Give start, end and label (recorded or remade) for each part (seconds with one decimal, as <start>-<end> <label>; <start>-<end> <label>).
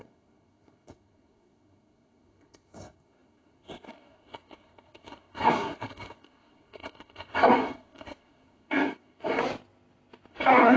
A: 0.0-9.4 remade; 9.4-10.3 recorded; 10.3-10.8 remade